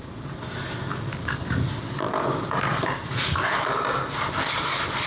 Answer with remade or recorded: remade